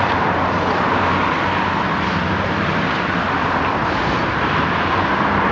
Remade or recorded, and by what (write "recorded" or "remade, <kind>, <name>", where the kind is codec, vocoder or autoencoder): remade, vocoder, BigVGAN v2